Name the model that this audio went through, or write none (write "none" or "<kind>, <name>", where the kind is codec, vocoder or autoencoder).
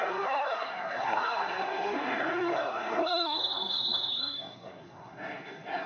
codec, SNAC